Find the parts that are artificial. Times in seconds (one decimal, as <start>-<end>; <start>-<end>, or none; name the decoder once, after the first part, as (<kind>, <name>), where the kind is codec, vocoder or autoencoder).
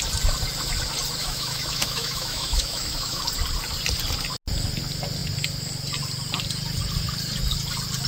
1.2-3.2 (autoencoder, DAC-VAE)